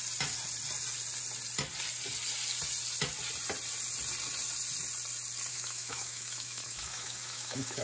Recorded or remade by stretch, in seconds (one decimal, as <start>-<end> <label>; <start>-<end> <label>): 0.0-5.5 recorded; 5.5-7.8 remade